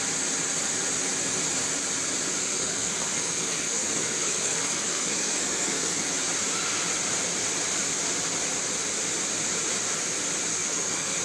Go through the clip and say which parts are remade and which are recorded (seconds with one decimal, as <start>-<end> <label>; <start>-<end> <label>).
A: 0.0-2.4 recorded; 2.4-6.1 remade; 6.1-10.5 recorded; 10.5-11.2 remade